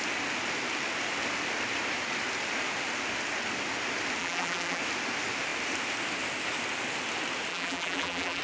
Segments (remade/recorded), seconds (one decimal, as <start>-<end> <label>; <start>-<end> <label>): 0.0-4.2 recorded; 4.2-4.8 remade; 4.8-7.5 recorded; 7.5-8.4 remade